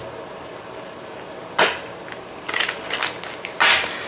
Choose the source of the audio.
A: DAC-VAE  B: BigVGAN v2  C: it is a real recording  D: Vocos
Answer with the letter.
C